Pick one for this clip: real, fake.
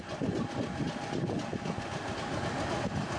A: real